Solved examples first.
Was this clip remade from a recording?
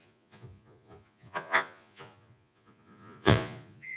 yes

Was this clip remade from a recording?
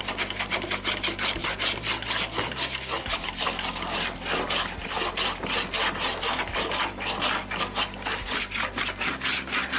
no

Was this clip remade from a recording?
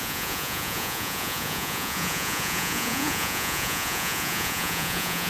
yes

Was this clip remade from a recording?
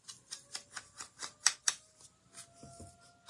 no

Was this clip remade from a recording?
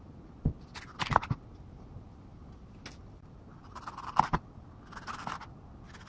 no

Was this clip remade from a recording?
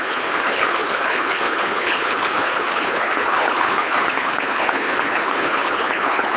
yes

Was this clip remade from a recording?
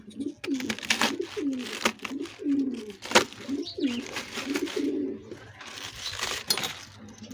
no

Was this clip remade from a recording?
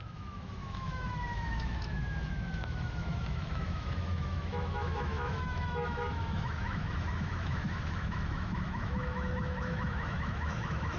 yes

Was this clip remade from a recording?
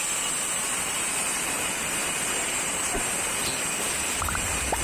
no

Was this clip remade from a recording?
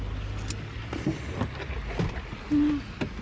no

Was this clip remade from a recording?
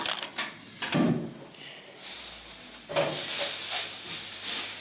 no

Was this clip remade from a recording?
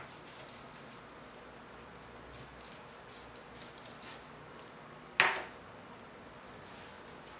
no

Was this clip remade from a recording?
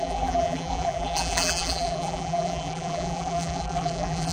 yes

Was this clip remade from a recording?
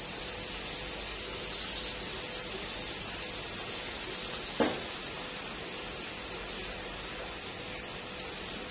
no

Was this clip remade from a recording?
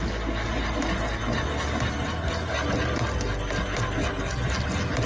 no